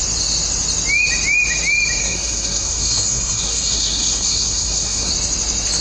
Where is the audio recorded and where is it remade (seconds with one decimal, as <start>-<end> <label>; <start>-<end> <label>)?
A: 0.0-2.0 recorded; 2.0-5.1 remade; 5.1-5.8 recorded